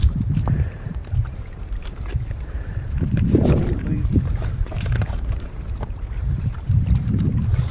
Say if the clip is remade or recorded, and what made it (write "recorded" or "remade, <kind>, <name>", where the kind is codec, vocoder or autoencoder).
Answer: remade, vocoder, BigVGAN v2